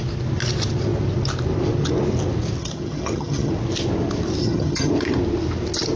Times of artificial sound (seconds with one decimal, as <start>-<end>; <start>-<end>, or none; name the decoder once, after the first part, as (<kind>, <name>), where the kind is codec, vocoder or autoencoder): 2.6-3.5 (vocoder, HiFi-GAN); 4.4-4.9